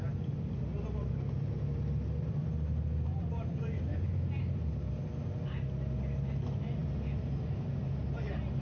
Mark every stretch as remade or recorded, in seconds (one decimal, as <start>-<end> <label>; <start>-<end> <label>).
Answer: 0.0-3.1 recorded; 3.1-4.4 remade; 4.4-8.6 recorded